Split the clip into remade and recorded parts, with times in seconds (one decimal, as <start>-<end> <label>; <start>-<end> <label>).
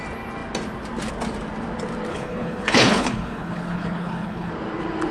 0.0-2.1 recorded; 2.1-4.5 remade; 4.5-5.1 recorded